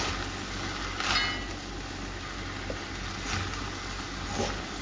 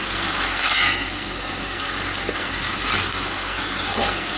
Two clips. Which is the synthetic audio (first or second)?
second